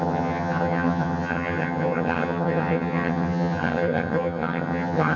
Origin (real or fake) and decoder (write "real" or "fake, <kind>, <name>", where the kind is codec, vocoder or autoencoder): fake, vocoder, HiFi-GAN